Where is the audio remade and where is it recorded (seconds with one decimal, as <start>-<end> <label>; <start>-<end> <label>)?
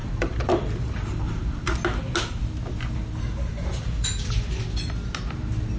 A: 0.0-1.7 remade; 1.7-3.3 recorded; 3.3-4.6 remade; 4.6-5.8 recorded